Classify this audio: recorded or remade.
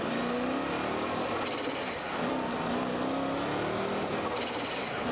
recorded